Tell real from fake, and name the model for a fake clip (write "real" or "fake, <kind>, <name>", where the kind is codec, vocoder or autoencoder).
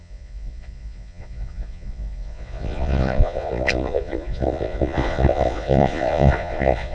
fake, vocoder, Vocos